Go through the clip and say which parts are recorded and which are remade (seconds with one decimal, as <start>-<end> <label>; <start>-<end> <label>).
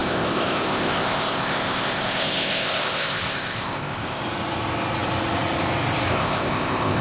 0.0-4.2 remade; 4.2-6.1 recorded; 6.1-7.0 remade